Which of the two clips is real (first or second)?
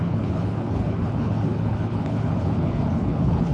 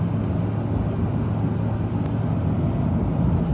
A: second